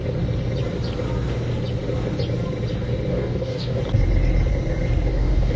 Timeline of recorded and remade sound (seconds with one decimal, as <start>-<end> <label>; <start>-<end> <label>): 0.0-3.1 recorded; 3.1-3.8 remade; 3.8-5.1 recorded; 5.1-5.6 remade